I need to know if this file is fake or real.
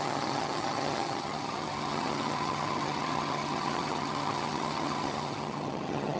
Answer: fake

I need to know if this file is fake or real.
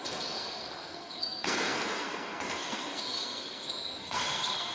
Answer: fake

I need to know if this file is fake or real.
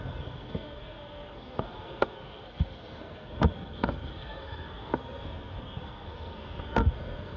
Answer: fake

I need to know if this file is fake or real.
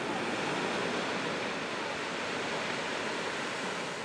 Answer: real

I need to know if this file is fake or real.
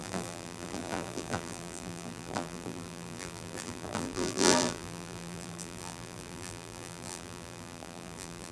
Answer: fake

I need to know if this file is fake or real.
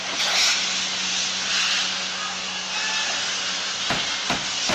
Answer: real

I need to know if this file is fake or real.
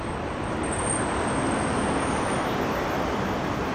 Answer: fake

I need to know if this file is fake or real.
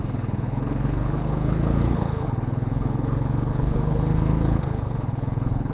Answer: fake